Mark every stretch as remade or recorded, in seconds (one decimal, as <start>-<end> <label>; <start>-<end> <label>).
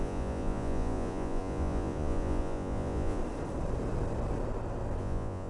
0.0-3.2 remade; 3.2-5.0 recorded; 5.0-5.5 remade